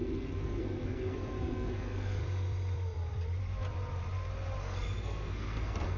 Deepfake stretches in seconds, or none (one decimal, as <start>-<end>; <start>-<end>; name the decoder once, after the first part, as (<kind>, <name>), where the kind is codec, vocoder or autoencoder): 0.0-2.2 (codec, SNAC); 4.6-6.0